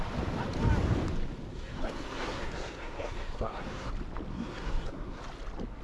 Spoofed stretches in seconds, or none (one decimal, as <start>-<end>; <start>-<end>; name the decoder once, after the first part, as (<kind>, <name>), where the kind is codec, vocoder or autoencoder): 1.5-3.9 (codec, SNAC); 4.3-5.2